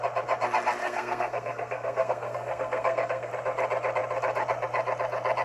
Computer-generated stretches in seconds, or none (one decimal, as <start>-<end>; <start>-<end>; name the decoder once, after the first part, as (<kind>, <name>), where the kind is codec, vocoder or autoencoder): 0.8-3.3 (codec, SNAC)